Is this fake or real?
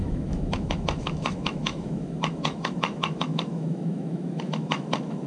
fake